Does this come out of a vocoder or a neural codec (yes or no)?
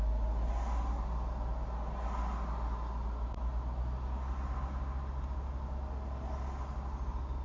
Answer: no